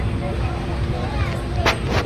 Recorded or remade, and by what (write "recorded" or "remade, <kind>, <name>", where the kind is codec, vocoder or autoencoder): recorded